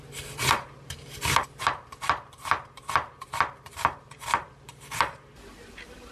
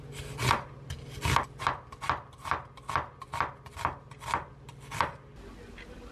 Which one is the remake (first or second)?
first